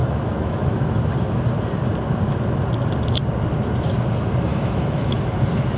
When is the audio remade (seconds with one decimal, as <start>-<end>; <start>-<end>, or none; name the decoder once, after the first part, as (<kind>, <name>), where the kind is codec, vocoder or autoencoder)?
0.0-0.9 (autoencoder, DAC-VAE); 4.5-5.2